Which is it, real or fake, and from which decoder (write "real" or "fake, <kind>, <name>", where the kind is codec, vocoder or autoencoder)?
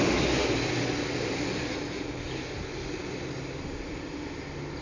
real